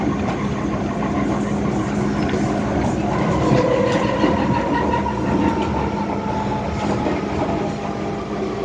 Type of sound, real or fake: real